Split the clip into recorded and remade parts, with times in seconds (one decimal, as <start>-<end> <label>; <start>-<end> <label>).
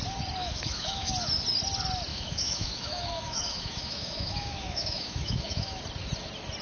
0.0-0.4 recorded; 0.4-1.1 remade; 1.1-2.1 recorded; 2.1-5.8 remade; 5.8-6.6 recorded